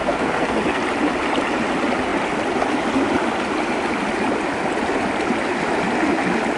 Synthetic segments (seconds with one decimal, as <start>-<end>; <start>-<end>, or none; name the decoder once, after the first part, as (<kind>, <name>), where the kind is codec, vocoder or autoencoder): 0.0-0.8 (codec, SNAC)